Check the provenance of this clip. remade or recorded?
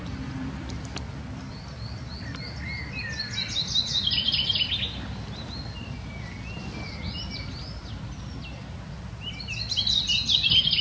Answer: recorded